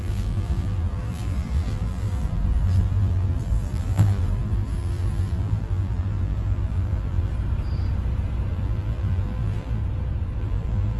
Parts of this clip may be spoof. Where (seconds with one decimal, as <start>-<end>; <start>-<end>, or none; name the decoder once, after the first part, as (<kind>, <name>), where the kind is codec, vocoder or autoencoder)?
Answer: 0.0-7.3 (vocoder, BigVGAN v2); 8.5-9.8; 10.4-11.0